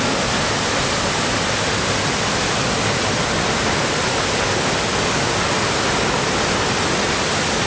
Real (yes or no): yes